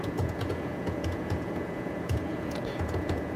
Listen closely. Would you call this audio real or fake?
fake